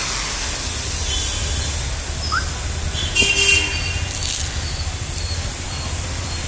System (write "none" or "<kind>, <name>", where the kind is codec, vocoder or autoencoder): none